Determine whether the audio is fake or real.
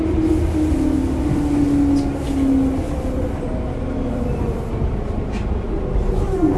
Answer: real